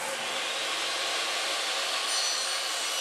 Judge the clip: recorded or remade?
recorded